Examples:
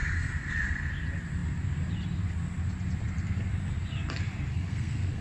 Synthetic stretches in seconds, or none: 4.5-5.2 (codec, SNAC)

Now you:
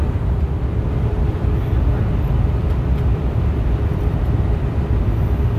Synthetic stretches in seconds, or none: 3.1-4.1 (vocoder, BigVGAN v2)